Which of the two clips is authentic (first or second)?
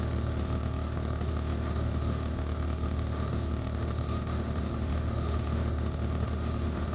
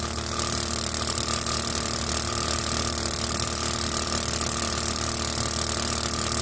second